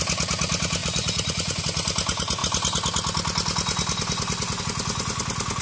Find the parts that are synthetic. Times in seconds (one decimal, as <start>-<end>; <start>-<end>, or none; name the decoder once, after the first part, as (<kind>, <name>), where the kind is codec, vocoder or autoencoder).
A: 0.8-1.6 (vocoder, Vocos)